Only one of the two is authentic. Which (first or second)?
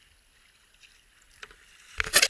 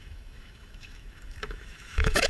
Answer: first